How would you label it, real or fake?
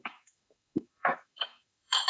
fake